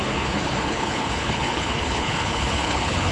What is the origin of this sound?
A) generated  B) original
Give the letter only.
A